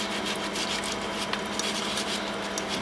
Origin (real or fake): real